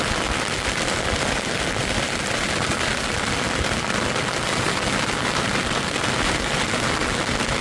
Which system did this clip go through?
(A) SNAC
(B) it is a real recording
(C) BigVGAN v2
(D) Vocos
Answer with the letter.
C